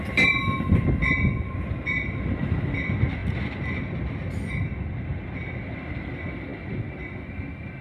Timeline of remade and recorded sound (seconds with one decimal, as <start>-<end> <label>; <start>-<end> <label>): 0.0-7.8 recorded